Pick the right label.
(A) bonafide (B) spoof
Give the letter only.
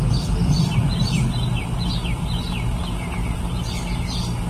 A